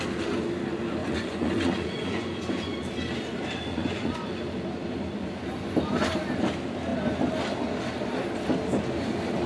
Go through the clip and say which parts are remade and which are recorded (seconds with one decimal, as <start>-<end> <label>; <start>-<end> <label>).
0.0-1.0 recorded; 1.0-2.8 remade; 2.8-3.7 recorded; 3.7-4.4 remade; 4.4-9.5 recorded